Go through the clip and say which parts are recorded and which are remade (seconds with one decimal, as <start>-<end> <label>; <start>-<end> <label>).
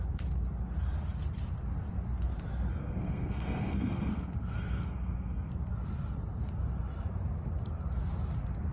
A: 0.0-2.7 recorded; 2.7-5.5 remade; 5.5-8.7 recorded